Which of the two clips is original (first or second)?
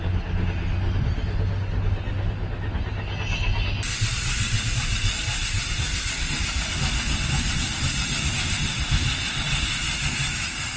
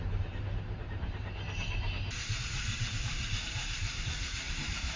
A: first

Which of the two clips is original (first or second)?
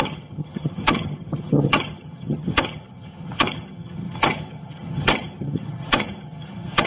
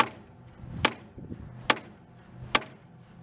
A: second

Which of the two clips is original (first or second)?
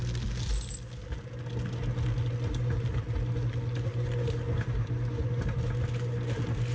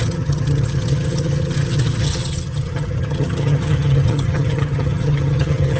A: first